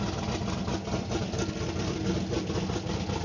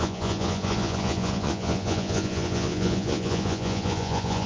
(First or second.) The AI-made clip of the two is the second